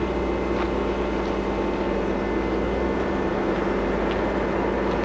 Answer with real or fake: real